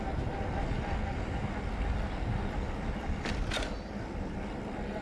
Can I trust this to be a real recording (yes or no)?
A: yes